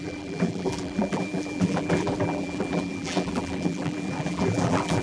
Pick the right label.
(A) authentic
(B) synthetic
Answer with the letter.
B